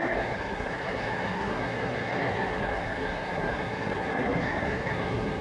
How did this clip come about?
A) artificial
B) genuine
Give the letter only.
A